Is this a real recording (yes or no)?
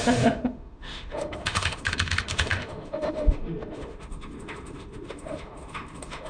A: no